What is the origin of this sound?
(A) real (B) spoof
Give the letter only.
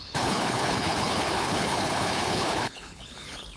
B